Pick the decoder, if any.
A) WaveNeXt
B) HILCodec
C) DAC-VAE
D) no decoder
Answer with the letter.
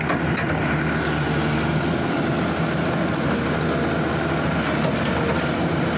D